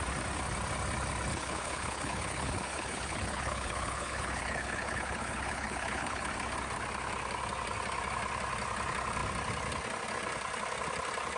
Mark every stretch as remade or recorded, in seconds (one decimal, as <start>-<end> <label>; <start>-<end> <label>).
0.0-1.3 recorded; 1.3-6.3 remade; 6.3-11.4 recorded